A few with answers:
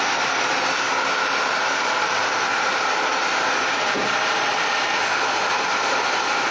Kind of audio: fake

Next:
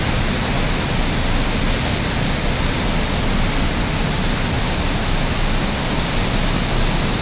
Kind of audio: real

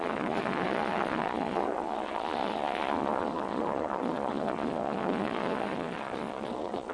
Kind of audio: fake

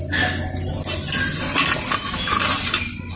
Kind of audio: real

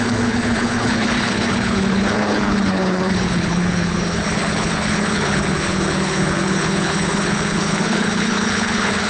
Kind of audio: fake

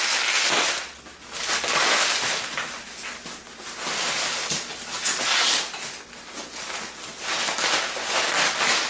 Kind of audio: real